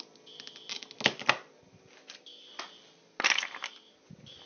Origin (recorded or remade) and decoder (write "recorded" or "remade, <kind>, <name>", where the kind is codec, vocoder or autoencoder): recorded